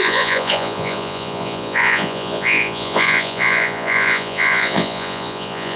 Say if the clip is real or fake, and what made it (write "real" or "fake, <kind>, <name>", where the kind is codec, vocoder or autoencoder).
fake, vocoder, Vocos